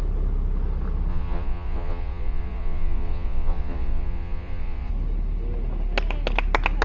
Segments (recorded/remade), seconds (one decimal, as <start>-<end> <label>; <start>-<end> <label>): 0.0-1.1 recorded; 1.1-4.9 remade; 4.9-6.8 recorded